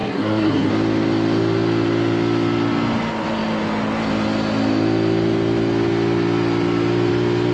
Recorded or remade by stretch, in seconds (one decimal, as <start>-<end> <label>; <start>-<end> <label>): 0.0-0.7 remade; 0.7-7.5 recorded

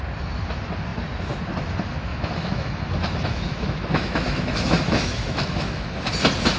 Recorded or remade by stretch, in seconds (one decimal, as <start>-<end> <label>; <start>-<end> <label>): 0.0-2.1 recorded; 2.1-6.1 remade; 6.1-6.6 recorded

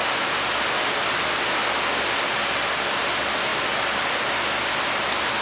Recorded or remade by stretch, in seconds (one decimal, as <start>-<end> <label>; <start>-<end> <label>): 0.0-5.4 recorded

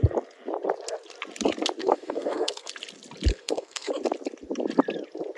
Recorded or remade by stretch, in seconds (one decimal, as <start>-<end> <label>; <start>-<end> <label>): 0.0-1.8 recorded; 1.8-2.7 remade; 2.7-3.3 recorded; 3.3-3.9 remade; 3.9-5.4 recorded